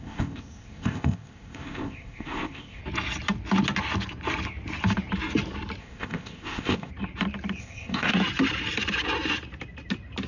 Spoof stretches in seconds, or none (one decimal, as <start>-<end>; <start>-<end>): 0.0-2.8; 5.8-6.9; 7.6-8.1